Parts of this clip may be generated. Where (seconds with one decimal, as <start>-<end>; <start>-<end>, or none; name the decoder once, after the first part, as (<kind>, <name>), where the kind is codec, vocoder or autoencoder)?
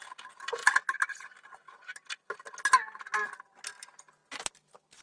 none